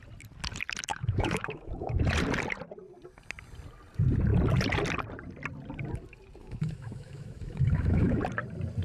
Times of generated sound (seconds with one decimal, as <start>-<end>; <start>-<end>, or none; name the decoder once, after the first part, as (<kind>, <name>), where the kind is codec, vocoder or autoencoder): 0.9-2.0 (autoencoder, DAC-VAE); 6.4-8.2